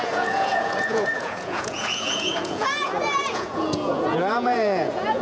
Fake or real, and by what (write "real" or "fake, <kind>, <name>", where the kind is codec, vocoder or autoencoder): fake, vocoder, Vocos